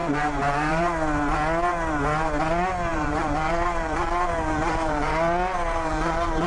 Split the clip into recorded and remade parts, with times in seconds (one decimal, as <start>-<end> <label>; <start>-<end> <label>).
0.0-0.8 remade; 0.8-2.9 recorded; 2.9-5.1 remade; 5.1-5.5 recorded; 5.5-6.5 remade